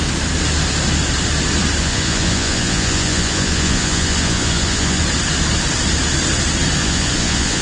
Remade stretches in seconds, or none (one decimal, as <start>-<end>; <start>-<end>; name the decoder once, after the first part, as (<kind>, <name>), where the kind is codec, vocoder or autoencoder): 1.8-5.0 (vocoder, Vocos); 6.8-7.6